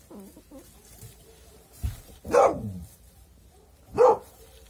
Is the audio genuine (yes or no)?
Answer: yes